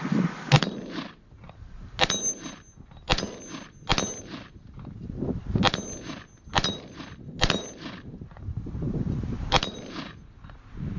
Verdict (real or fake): real